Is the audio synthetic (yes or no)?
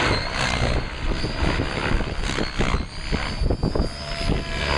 no